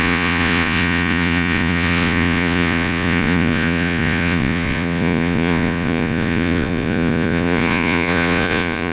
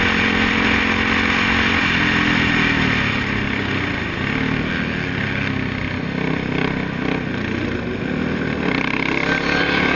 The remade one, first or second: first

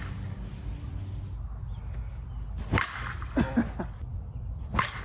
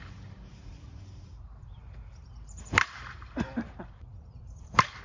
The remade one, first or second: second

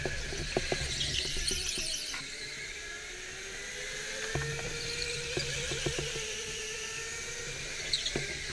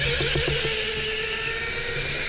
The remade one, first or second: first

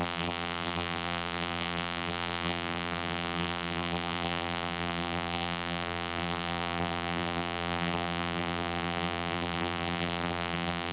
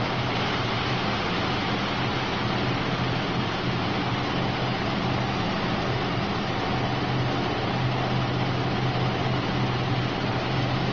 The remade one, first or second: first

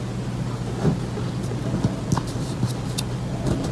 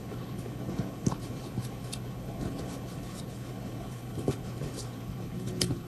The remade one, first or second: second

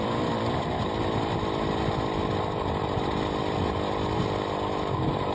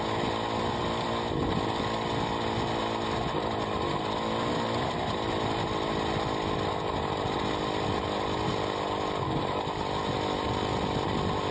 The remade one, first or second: first